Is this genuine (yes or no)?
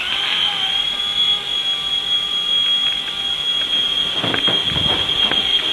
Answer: yes